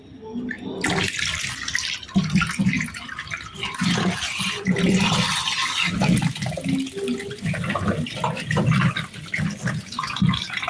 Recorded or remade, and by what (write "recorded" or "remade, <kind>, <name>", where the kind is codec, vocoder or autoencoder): recorded